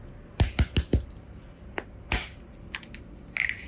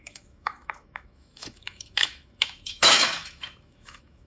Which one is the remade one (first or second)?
second